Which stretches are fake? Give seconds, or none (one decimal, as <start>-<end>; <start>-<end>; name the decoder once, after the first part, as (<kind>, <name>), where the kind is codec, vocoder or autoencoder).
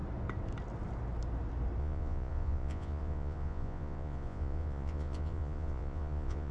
1.8-6.5 (vocoder, Vocos)